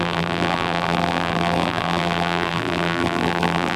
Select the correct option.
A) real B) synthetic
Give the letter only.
B